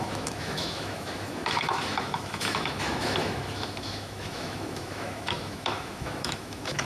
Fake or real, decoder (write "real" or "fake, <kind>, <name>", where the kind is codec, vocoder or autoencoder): fake, autoencoder, DAC-VAE